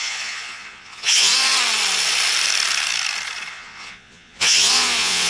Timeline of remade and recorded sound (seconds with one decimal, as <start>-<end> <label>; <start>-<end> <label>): 0.0-1.3 remade; 1.3-3.5 recorded; 3.5-5.3 remade